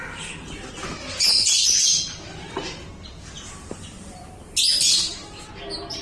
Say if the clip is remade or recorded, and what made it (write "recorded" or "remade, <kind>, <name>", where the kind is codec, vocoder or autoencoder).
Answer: recorded